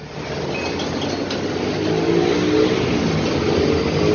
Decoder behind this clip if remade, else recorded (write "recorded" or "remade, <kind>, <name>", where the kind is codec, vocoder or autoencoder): recorded